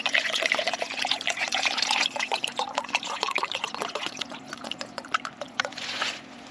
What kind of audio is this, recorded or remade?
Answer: remade